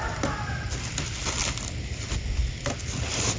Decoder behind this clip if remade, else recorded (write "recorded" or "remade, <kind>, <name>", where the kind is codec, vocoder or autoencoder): recorded